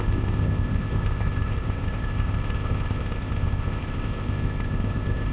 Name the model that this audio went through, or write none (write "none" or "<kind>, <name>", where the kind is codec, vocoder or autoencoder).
codec, ZipCodec